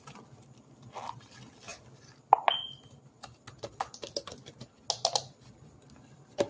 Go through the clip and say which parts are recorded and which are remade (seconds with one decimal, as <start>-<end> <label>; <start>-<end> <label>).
0.0-6.5 recorded